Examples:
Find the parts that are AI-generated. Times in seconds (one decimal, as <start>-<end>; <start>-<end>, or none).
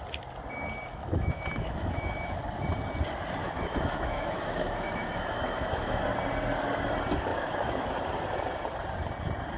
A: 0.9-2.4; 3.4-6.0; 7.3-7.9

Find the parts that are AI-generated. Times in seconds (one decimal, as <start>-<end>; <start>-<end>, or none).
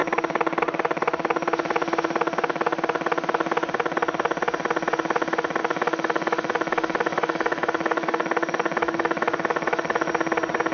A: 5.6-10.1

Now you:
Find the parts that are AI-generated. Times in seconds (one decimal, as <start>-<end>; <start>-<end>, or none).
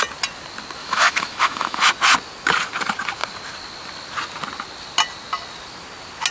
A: 0.8-1.9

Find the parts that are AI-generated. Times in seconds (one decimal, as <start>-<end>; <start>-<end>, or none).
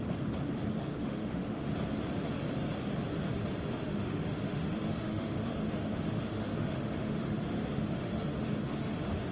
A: 1.0-1.7; 3.7-9.3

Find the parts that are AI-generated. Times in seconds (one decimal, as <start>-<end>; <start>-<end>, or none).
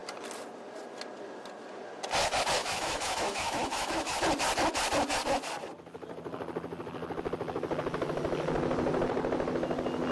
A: 2.6-4.2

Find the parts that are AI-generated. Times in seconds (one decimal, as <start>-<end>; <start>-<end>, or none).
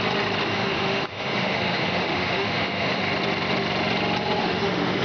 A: 0.5-3.0; 4.4-5.0